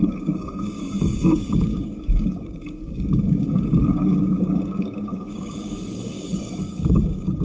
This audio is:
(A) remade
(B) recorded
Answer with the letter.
A